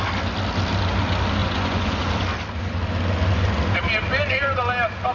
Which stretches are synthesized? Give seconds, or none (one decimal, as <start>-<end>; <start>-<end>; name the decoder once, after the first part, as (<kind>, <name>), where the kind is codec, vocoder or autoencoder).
1.4-2.1 (vocoder, Vocos)